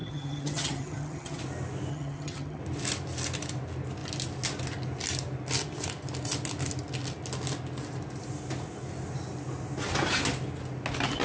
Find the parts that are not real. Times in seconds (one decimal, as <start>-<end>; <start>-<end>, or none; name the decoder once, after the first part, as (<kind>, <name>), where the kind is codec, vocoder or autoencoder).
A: 0.0-1.4 (vocoder, HiFi-GAN); 1.9-2.6